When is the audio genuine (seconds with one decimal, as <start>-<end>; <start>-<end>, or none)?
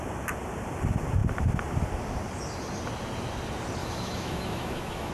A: 0.0-3.8